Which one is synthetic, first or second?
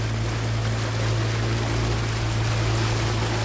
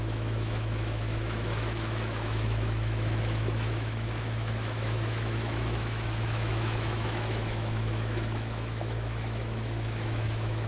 second